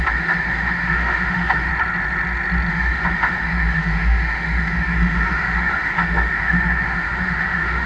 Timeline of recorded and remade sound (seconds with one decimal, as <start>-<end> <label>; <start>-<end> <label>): 0.0-1.7 remade; 1.7-2.7 recorded; 2.7-7.9 remade